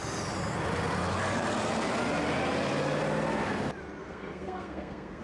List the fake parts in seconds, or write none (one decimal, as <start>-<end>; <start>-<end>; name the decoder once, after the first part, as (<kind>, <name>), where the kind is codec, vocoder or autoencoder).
4.0-5.2 (codec, SNAC)